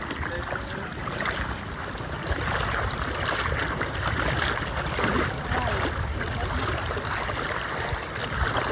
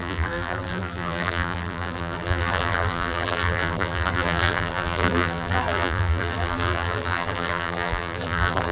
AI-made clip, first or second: second